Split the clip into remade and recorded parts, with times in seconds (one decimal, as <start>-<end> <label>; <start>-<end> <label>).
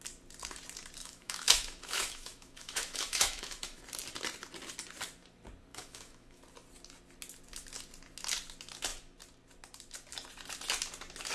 0.0-1.0 recorded; 1.0-3.8 remade; 3.8-5.7 recorded; 5.7-6.4 remade; 6.4-11.3 recorded